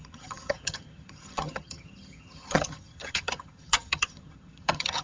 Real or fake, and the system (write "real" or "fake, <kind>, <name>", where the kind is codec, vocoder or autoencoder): fake, vocoder, HiFi-GAN